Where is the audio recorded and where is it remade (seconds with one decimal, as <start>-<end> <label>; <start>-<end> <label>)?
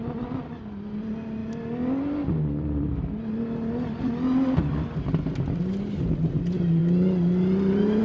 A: 0.0-8.0 recorded